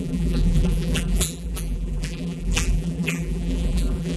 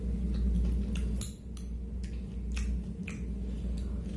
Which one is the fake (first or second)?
first